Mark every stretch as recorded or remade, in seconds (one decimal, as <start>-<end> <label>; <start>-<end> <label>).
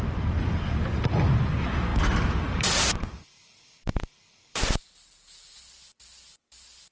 0.0-6.9 recorded